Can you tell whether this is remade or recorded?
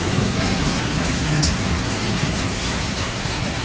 remade